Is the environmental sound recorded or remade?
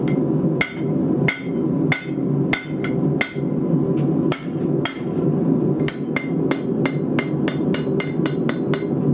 recorded